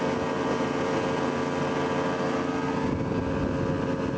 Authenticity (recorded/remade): recorded